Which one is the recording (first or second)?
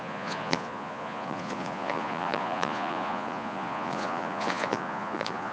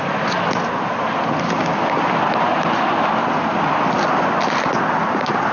second